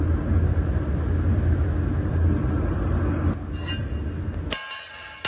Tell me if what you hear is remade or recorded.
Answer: recorded